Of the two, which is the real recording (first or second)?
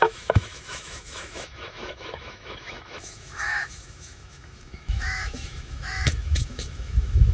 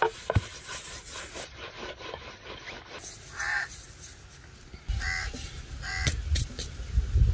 second